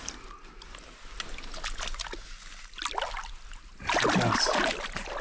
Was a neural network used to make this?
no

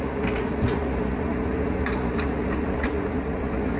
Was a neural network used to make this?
yes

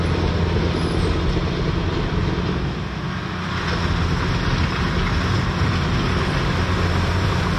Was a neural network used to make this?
no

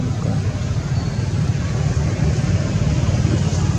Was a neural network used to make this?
no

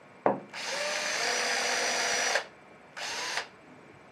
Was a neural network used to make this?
no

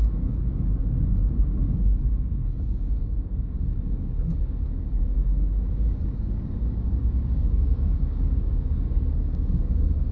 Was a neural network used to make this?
yes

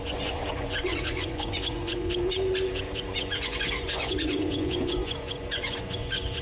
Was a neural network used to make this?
yes